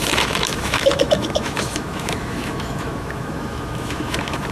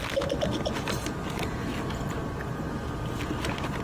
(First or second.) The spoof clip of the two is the first